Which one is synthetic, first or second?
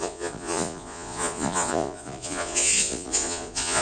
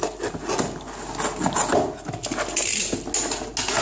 first